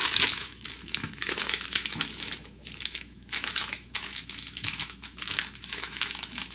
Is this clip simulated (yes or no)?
yes